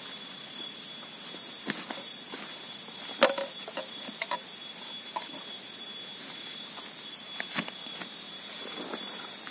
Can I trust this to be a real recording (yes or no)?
yes